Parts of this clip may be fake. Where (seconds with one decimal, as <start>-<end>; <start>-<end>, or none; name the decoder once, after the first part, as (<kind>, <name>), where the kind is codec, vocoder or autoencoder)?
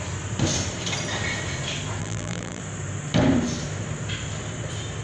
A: 2.0-2.6 (vocoder, BigVGAN v2)